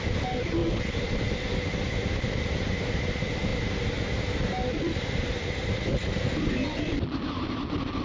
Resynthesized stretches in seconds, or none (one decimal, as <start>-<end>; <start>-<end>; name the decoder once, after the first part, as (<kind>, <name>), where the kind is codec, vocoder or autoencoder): none